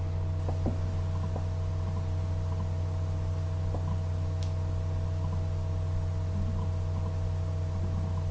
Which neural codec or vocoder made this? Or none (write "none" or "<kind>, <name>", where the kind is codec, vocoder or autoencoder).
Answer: none